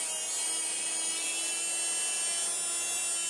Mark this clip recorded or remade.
recorded